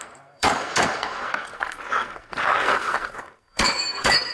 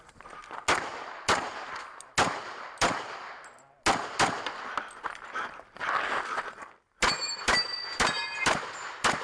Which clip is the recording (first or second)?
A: second